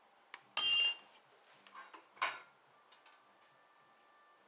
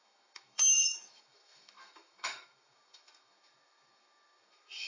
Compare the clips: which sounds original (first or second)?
first